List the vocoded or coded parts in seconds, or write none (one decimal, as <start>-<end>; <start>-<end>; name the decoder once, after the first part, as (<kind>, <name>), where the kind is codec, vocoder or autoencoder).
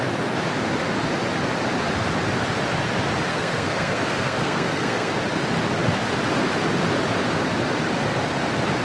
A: 3.3-5.1 (codec, SNAC)